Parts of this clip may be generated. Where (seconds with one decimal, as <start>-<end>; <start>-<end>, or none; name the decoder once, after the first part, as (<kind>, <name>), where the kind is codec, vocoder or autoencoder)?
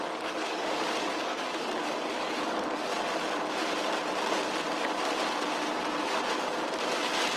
0.0-2.9 (codec, DAC)